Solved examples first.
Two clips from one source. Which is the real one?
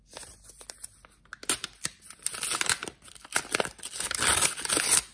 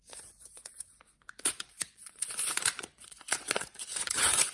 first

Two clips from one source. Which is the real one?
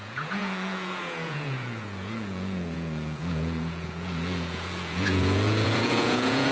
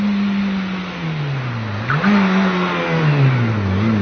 second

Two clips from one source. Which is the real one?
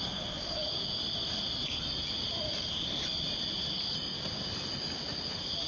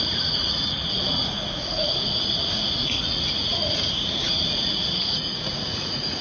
first